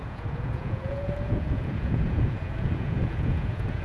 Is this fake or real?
fake